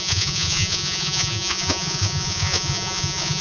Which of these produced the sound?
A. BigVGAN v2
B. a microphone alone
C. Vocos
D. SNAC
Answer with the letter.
C